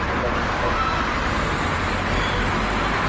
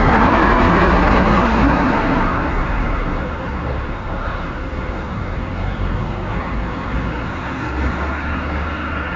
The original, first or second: first